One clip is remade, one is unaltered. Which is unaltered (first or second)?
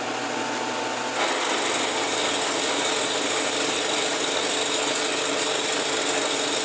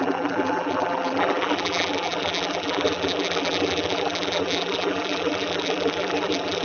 first